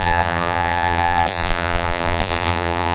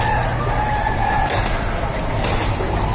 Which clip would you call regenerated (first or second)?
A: first